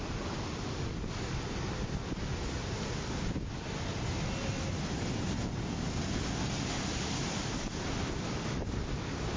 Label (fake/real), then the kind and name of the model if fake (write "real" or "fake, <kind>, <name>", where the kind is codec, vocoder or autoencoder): real